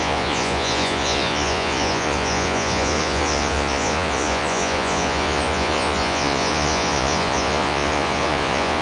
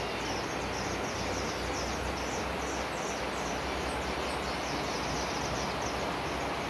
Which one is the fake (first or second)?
first